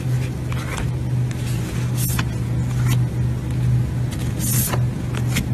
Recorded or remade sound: recorded